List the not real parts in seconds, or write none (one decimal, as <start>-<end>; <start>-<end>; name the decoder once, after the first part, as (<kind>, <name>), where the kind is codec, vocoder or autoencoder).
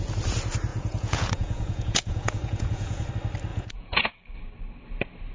0.7-3.1 (vocoder, Vocos); 3.5-4.1